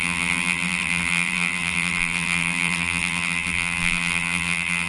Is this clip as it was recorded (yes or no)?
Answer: no